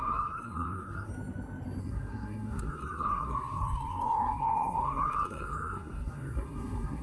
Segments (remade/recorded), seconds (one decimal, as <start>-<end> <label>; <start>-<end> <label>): 0.0-1.1 remade; 1.1-1.8 recorded; 1.8-7.0 remade